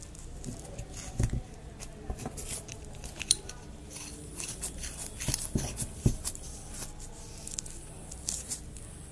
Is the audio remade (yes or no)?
no